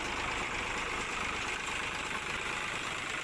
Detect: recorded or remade recorded